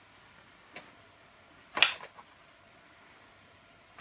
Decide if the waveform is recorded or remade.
recorded